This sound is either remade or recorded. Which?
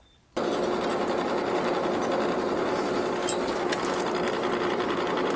recorded